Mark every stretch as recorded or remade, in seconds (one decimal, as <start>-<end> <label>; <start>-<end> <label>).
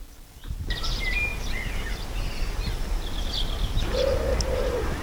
0.0-5.0 recorded